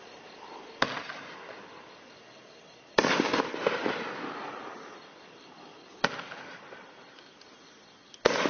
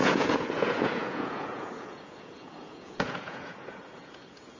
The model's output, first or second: second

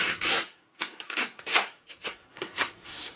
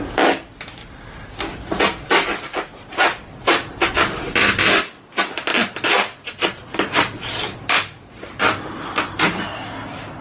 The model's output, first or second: first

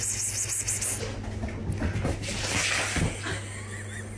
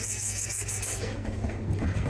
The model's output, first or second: second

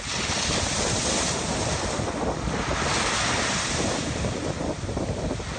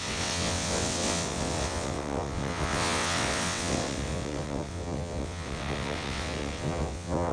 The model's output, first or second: second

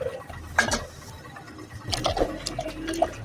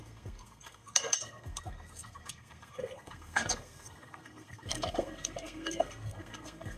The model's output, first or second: second